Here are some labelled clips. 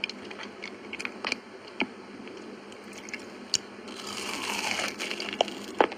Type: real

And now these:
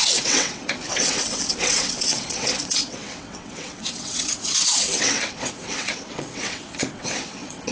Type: fake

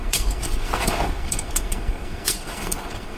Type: fake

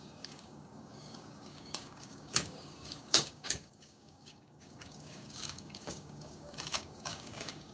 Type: fake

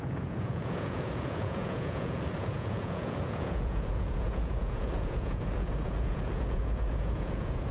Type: fake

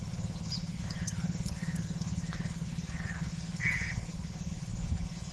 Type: fake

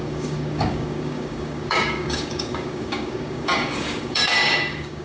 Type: fake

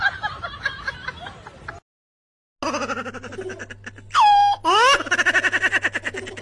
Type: real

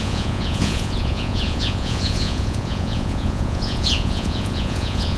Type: fake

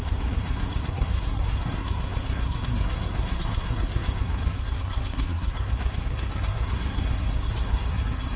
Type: fake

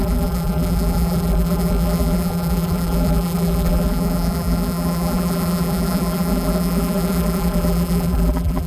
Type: fake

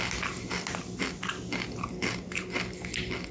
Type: real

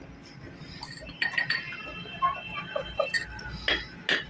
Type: real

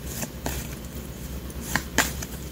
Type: real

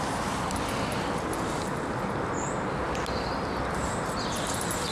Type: real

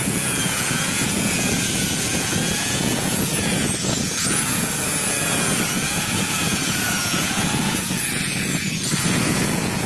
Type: fake